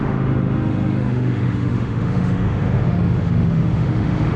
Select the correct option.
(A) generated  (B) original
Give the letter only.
A